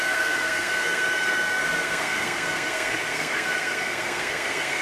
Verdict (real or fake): fake